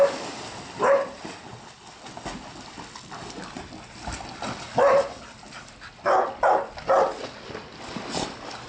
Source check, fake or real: real